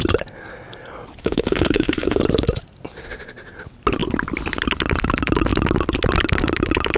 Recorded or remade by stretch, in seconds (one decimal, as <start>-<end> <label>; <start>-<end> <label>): 0.0-1.2 recorded; 1.2-2.2 remade; 2.2-7.0 recorded